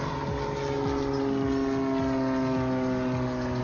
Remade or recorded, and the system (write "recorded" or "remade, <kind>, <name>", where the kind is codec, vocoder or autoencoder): recorded